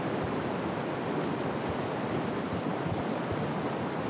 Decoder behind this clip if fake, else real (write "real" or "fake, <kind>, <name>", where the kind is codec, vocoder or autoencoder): real